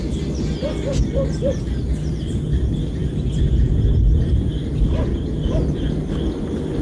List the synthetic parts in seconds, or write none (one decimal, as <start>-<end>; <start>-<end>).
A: none